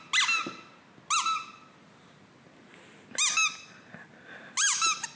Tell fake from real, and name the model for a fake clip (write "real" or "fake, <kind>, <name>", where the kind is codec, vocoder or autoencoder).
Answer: real